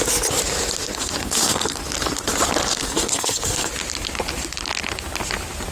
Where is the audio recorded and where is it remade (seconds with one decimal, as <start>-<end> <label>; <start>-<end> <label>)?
0.0-0.9 recorded; 0.9-1.8 remade; 1.8-2.7 recorded; 2.7-3.7 remade; 3.7-5.7 recorded